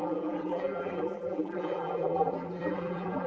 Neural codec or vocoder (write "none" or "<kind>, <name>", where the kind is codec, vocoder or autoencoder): vocoder, BigVGAN v2